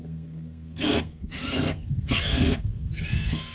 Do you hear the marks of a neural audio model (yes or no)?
yes